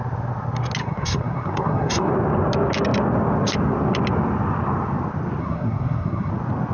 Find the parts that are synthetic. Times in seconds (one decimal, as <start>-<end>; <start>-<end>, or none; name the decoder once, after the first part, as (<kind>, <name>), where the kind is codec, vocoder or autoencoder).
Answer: 0.8-2.1 (codec, SNAC); 5.4-6.3